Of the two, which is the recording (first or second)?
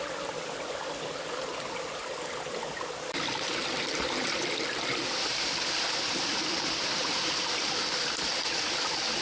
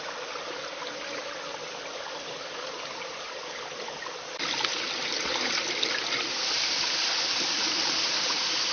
second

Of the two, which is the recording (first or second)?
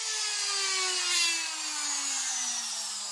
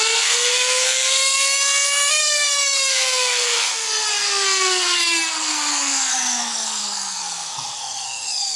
first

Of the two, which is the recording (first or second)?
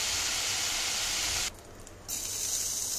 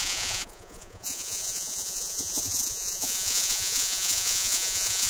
first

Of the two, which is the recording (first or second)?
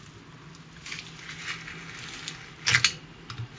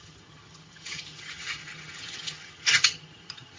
first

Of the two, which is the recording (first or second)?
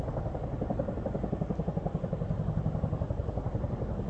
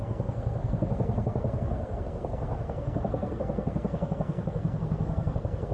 first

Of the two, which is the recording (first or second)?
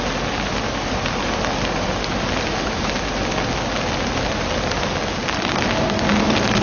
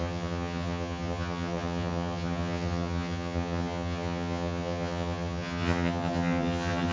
first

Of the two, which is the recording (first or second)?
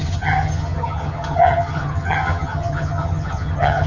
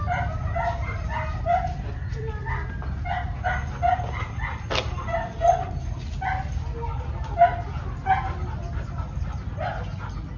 second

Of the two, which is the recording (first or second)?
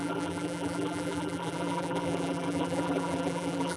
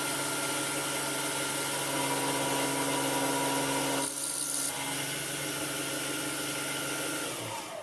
second